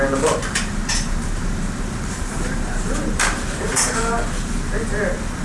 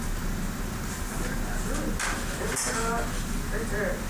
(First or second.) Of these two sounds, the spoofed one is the first